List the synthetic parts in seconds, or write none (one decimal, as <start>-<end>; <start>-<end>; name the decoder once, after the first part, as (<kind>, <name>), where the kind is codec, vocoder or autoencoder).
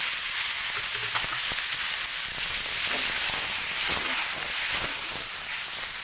none